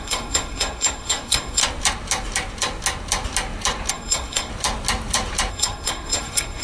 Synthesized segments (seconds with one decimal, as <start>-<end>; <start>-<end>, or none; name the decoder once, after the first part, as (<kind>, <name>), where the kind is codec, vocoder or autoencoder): 0.0-1.6 (codec, SNAC); 3.9-4.5; 5.5-6.6